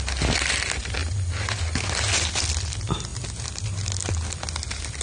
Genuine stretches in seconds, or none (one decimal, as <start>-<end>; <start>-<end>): 0.0-5.0